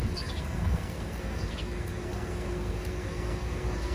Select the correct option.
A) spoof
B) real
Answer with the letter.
A